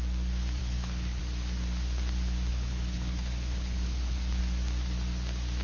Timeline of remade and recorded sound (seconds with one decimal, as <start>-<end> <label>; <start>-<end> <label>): 0.0-0.6 recorded; 0.6-1.2 remade; 1.2-2.5 recorded; 2.5-4.4 remade; 4.4-5.6 recorded